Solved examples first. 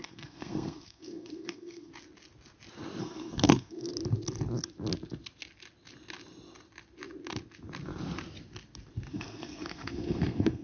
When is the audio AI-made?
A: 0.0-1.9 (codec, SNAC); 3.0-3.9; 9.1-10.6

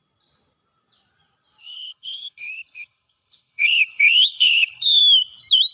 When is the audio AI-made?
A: 1.6-5.0 (codec, HILCodec)

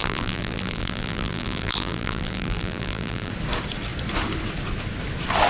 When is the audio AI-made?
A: 0.0-3.3 (vocoder, BigVGAN v2)

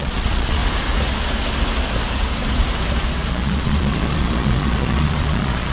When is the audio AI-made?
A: 0.0-0.6 (vocoder, Vocos); 3.3-5.7

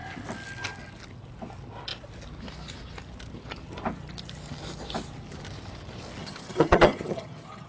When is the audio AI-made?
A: 6.2-7.7 (vocoder, HiFi-GAN)

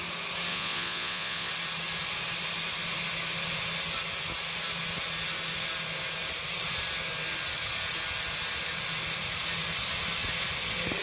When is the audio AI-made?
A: 0.5-1.5 (vocoder, Vocos)

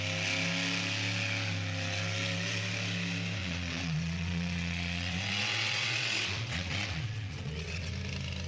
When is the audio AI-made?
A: 3.4-7.9 (vocoder, WaveNeXt)